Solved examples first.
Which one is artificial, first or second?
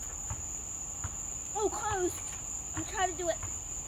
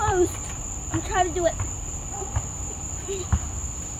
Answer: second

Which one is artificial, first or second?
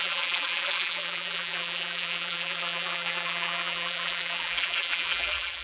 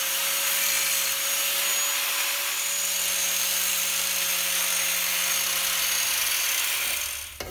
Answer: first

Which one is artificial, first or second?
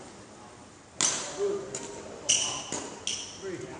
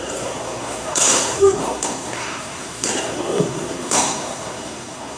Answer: second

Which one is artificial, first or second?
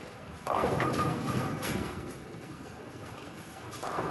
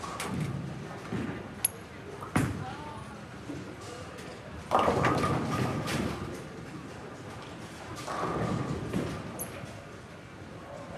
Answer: first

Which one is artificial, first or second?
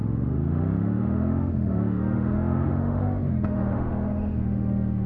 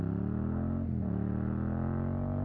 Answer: first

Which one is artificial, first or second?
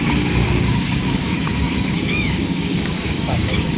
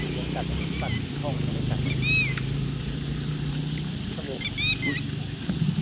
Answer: first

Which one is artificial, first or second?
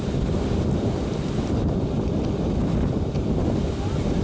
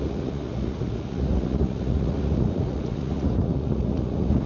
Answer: second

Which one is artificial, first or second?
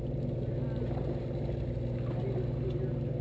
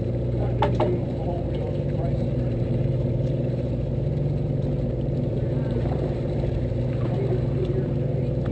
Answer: second